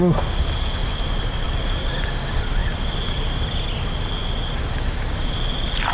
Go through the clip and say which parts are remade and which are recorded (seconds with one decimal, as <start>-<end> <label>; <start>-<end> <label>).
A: 0.0-0.8 recorded; 0.8-1.9 remade; 1.9-5.9 recorded